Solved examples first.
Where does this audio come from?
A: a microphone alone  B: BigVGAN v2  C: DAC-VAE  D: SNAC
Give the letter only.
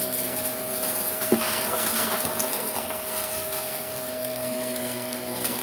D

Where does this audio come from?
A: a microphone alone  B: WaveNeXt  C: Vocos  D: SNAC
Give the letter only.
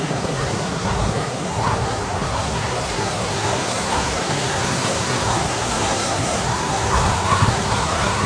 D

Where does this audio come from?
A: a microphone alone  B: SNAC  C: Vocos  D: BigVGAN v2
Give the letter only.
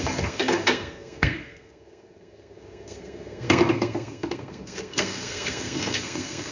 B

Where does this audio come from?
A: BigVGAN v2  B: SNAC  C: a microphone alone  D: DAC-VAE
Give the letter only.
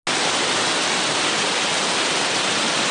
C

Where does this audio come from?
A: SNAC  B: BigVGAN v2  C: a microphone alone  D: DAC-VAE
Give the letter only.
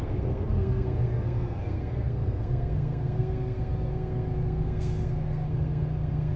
A